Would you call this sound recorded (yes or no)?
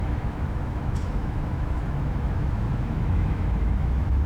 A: no